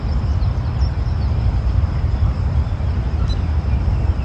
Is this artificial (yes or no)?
no